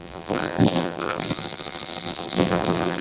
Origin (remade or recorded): remade